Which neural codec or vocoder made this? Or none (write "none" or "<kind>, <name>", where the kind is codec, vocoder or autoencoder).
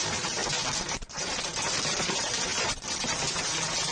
none